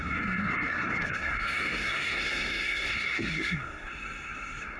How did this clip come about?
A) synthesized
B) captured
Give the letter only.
A